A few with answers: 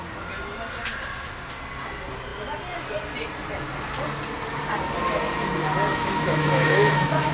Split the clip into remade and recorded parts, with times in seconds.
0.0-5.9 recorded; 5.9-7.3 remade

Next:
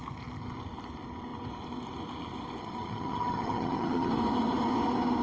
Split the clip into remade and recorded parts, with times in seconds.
0.0-2.6 recorded; 2.6-4.1 remade; 4.1-5.2 recorded

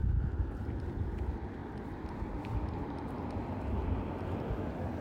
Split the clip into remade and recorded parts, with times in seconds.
0.0-0.6 remade; 0.6-1.6 recorded; 1.6-4.6 remade; 4.6-5.0 recorded

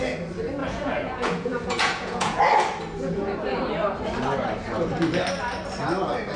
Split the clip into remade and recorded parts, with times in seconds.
0.0-0.6 recorded; 0.6-2.4 remade; 2.4-6.4 recorded

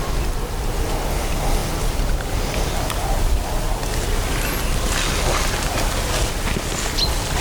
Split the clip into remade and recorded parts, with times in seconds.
0.0-7.4 recorded

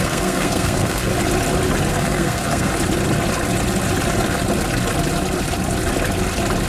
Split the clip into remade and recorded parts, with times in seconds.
0.0-1.1 remade; 1.1-1.9 recorded; 1.9-2.7 remade; 2.7-6.7 recorded

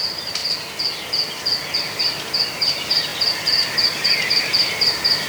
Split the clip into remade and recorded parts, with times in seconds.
0.0-0.4 remade; 0.4-1.8 recorded; 1.8-5.3 remade

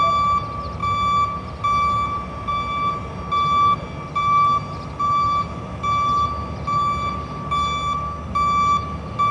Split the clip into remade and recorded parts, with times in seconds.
0.0-9.3 recorded